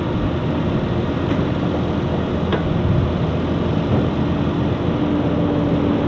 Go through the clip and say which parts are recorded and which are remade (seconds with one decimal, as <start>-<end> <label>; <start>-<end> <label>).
0.0-6.1 recorded